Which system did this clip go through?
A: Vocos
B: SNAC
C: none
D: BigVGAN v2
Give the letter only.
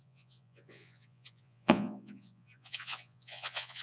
A